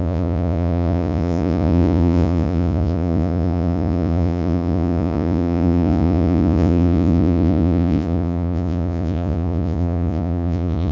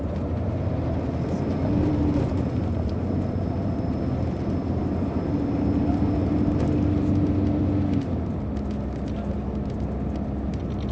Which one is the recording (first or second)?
second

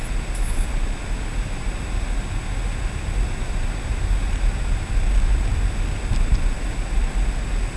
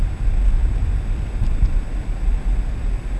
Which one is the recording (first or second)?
first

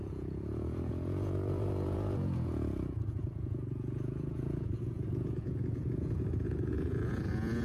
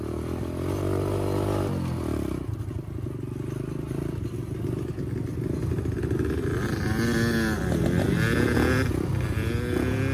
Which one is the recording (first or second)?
second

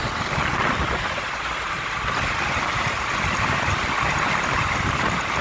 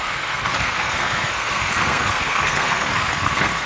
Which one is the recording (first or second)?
first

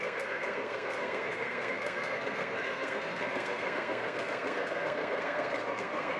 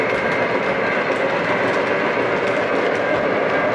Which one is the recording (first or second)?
second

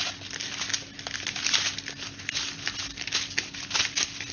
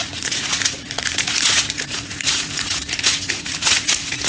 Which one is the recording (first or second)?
first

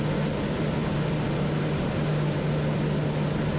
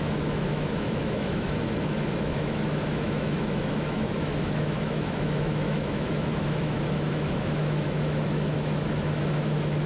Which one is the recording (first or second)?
first